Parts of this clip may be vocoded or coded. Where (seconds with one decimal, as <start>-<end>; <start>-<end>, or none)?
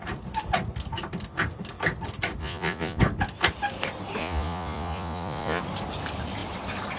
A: 2.4-3.0; 4.2-5.6